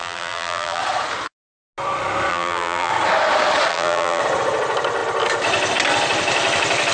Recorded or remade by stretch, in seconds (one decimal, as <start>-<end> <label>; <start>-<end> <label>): 0.0-0.8 remade; 0.8-2.3 recorded; 2.3-2.9 remade; 2.9-3.7 recorded; 3.7-4.2 remade; 4.2-6.9 recorded